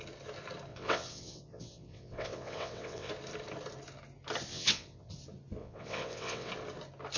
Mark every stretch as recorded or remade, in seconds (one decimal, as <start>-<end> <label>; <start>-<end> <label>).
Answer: 0.0-0.7 recorded; 0.7-3.1 remade; 3.1-4.5 recorded; 4.5-5.1 remade; 5.1-5.6 recorded; 5.6-6.5 remade; 6.5-7.2 recorded